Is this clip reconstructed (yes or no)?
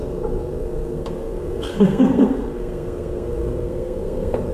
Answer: yes